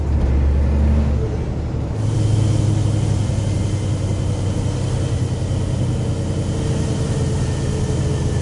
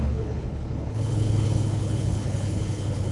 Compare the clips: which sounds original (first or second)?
first